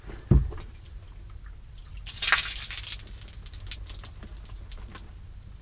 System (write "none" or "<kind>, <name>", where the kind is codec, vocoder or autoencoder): none